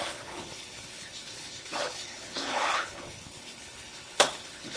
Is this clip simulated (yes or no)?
yes